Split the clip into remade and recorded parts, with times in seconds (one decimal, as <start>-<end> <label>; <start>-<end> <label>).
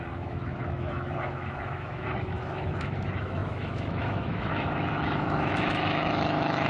0.0-6.7 remade